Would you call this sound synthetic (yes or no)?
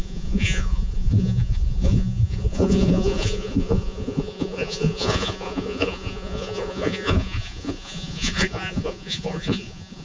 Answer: yes